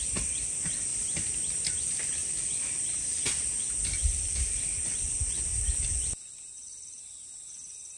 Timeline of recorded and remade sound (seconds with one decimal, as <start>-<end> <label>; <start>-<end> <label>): 0.0-8.0 recorded